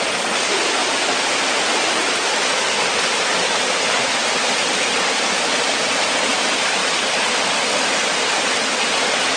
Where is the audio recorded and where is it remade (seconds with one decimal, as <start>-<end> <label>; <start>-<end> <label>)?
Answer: 0.0-0.8 recorded; 0.8-2.3 remade; 2.3-9.4 recorded